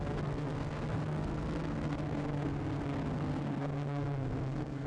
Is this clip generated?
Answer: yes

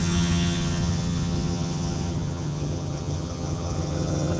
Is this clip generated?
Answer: yes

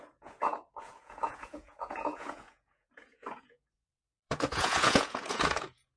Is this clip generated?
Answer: yes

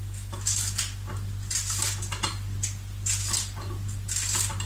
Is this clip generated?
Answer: no